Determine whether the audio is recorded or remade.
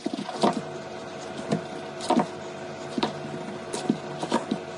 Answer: recorded